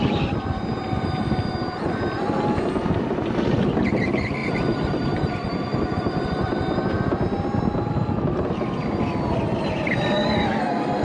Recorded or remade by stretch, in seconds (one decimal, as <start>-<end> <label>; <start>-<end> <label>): 0.0-11.0 recorded